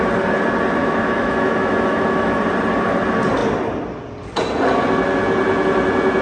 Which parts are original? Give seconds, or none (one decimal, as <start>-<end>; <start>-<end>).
0.0-0.8; 2.4-6.2